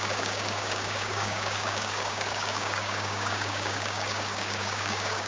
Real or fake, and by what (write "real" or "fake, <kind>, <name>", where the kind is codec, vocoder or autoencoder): fake, codec, DAC